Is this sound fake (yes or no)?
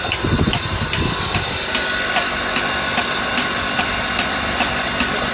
no